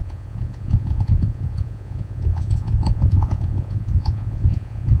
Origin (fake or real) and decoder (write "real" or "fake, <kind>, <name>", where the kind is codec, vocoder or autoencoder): fake, vocoder, Vocos